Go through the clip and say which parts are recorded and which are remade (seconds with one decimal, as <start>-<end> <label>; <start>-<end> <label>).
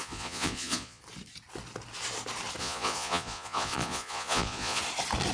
0.0-1.0 remade; 1.0-2.6 recorded; 2.6-4.8 remade; 4.8-5.3 recorded